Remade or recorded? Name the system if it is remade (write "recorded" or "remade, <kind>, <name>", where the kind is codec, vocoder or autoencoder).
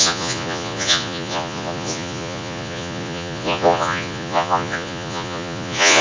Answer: remade, vocoder, Vocos